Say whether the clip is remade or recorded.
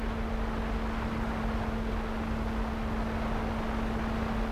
recorded